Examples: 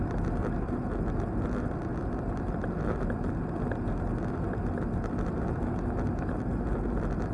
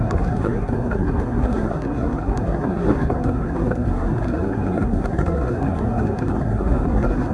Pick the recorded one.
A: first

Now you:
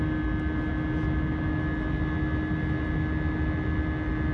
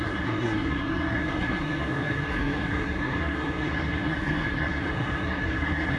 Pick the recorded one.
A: first